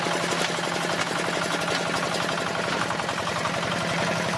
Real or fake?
real